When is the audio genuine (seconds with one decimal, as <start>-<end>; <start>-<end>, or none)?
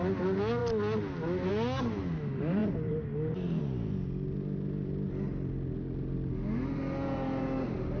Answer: 0.0-8.0